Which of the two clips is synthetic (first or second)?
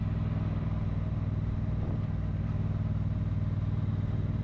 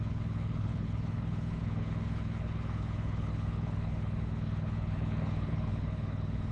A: second